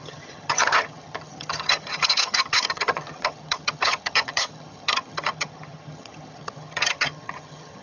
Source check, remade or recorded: remade